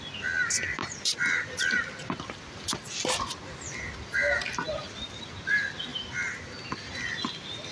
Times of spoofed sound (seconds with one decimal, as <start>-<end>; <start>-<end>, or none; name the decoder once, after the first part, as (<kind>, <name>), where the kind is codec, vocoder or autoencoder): none